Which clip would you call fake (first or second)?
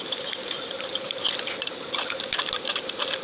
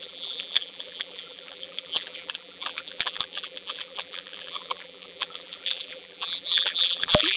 second